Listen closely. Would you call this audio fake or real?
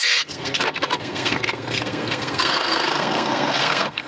fake